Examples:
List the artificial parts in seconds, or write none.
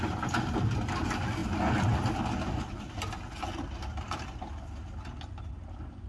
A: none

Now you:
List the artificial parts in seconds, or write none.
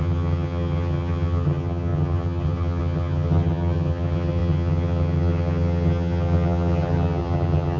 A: 0.0-7.8 (vocoder, HiFi-GAN)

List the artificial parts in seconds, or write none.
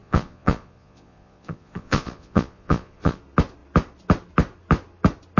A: 0.0-3.2 (vocoder, Vocos)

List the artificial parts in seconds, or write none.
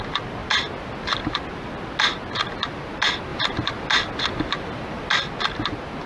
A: none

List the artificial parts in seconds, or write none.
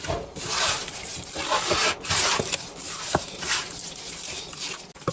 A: none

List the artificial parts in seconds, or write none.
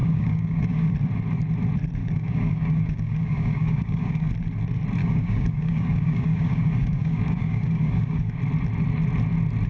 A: 0.0-0.9 (codec, DAC); 2.0-4.3; 5.0-8.4